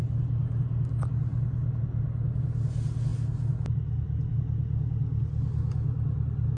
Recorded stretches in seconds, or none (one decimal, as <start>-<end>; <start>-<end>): 0.0-6.6